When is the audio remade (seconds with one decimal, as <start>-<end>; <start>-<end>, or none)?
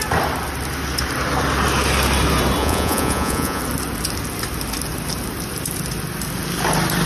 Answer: 2.6-3.6